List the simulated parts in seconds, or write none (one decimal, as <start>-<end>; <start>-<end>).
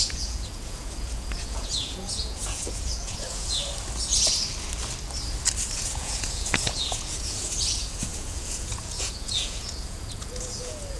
0.0-3.6; 5.7-11.0